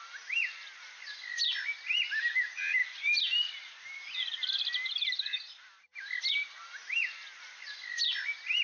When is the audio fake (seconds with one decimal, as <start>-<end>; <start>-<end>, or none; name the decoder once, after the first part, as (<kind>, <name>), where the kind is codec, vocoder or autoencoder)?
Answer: 2.8-6.2 (vocoder, BigVGAN v2)